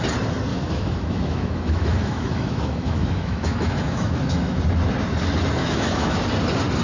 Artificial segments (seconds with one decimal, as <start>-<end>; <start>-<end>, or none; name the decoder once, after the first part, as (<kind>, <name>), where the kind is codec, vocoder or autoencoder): 0.5-4.6 (autoencoder, DAC-VAE); 5.6-6.2